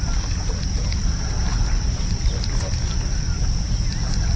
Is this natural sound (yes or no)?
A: yes